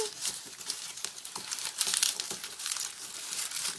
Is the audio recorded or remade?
recorded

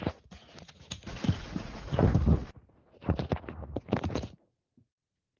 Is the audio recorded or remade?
remade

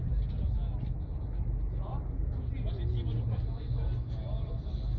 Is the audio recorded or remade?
recorded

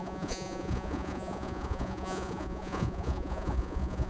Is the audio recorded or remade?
remade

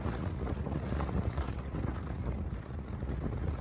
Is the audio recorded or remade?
remade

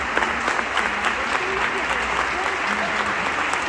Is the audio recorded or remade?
recorded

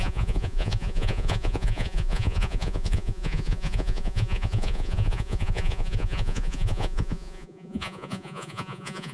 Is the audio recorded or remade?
remade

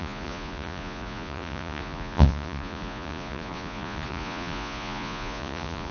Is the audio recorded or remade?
remade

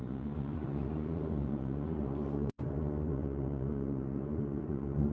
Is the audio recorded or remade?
remade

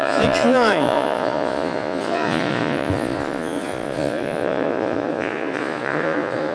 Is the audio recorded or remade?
remade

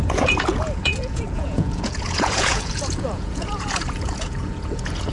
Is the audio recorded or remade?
remade